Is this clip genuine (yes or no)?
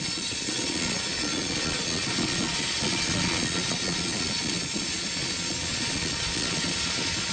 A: no